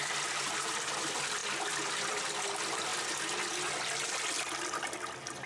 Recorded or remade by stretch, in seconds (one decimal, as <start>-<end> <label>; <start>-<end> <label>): 0.0-1.4 remade; 1.4-1.9 recorded; 1.9-2.9 remade; 2.9-4.6 recorded; 4.6-5.5 remade